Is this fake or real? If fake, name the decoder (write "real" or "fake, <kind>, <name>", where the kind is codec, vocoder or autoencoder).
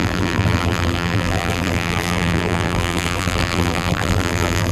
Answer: fake, vocoder, BigVGAN v2